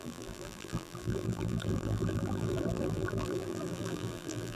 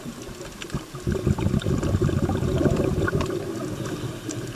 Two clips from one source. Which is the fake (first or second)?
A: first